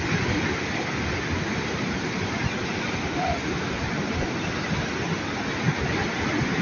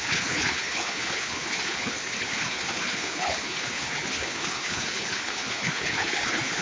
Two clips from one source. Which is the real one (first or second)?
first